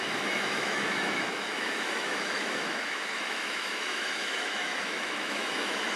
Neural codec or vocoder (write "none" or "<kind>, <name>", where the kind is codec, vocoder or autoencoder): autoencoder, DAC-VAE